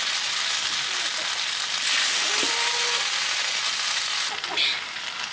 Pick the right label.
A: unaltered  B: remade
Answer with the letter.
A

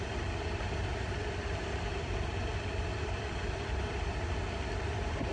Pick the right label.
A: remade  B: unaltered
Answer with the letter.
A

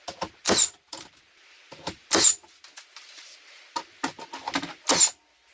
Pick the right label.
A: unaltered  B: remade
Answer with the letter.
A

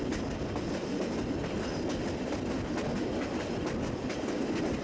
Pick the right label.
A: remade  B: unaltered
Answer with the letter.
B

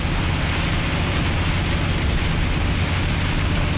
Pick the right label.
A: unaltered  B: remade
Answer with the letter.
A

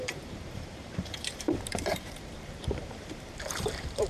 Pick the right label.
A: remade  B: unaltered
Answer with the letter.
A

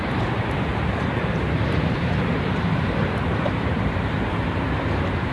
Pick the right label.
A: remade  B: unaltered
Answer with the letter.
A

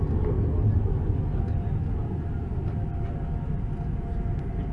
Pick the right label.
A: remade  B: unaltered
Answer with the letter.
B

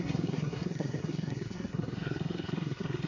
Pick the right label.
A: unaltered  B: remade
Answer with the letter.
B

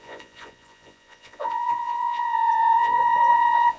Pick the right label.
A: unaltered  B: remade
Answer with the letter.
B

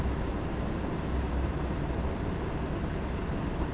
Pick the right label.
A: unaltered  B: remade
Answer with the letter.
A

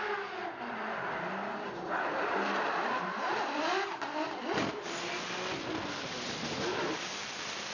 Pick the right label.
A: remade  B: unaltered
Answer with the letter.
B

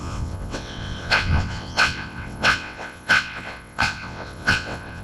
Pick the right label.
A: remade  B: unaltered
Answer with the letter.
A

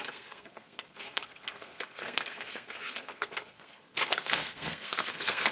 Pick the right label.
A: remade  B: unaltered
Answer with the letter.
A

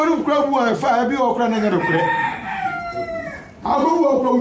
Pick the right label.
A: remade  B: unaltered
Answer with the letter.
B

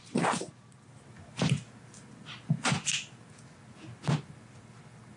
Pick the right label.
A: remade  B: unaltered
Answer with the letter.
B